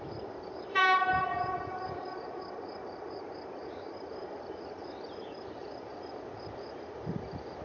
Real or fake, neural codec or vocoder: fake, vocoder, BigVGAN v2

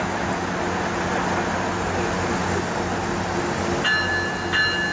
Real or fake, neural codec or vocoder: real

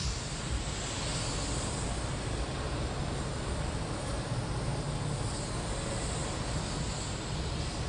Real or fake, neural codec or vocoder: real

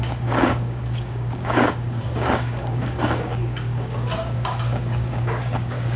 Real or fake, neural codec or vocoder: fake, codec, DAC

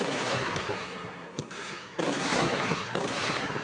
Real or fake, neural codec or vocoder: fake, codec, SNAC